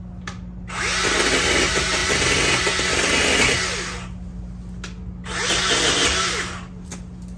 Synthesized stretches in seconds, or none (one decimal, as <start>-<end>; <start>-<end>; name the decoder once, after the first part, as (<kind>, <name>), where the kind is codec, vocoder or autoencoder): none